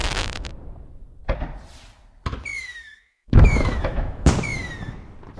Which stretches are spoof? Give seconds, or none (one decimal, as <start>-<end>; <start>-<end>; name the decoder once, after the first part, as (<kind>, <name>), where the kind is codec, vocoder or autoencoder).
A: 0.0-0.5 (autoencoder, DAC-VAE); 2.5-4.3